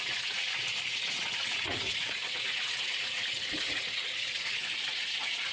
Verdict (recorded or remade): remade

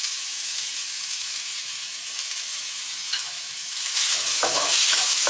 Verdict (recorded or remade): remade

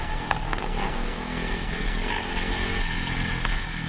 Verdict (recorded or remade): remade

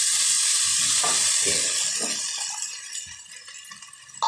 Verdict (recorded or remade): recorded